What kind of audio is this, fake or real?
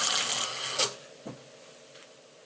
real